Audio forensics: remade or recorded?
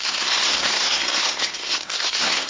remade